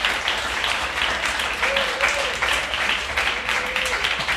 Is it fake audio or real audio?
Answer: fake